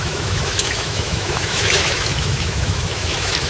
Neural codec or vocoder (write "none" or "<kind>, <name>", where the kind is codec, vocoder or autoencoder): autoencoder, DAC-VAE